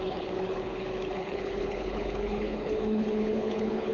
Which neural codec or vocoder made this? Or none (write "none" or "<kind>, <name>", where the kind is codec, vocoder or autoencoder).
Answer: codec, HILCodec